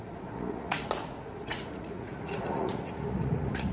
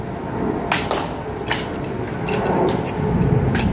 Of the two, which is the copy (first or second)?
first